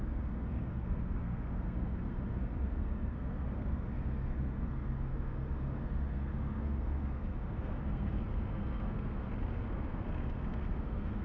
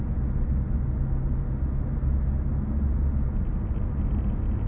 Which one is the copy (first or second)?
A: first